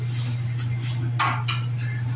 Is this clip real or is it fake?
real